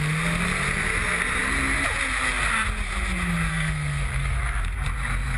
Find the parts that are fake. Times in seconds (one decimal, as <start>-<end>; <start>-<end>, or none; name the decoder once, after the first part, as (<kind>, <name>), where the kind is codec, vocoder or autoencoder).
3.5-4.6 (codec, SNAC)